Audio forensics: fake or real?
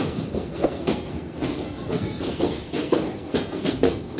fake